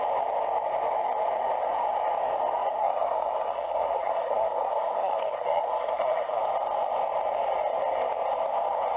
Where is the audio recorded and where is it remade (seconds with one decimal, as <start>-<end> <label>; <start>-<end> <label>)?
0.0-2.8 recorded; 2.8-6.4 remade; 6.4-9.0 recorded